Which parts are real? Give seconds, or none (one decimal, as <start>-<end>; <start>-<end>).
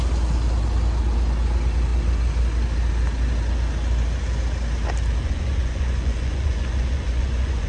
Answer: 0.0-5.2